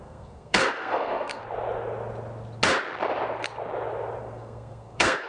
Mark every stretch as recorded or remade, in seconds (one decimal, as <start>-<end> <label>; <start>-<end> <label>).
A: 0.0-1.4 remade; 1.4-4.2 recorded; 4.2-5.3 remade